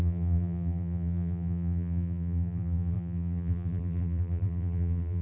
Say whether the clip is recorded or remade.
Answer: remade